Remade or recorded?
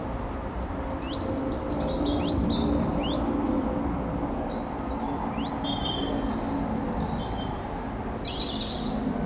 recorded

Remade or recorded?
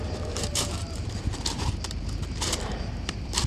remade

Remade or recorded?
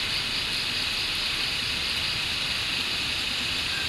recorded